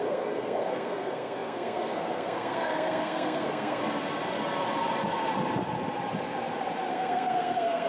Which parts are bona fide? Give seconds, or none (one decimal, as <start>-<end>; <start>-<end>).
3.8-6.9